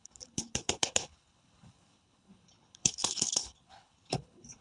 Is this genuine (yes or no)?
no